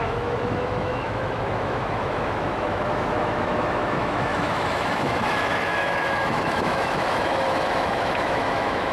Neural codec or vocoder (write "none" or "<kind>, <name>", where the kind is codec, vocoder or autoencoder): autoencoder, DAC-VAE